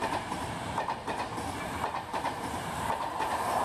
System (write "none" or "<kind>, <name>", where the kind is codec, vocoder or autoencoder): vocoder, BigVGAN v2